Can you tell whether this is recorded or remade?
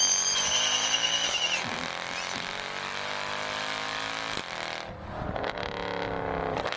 recorded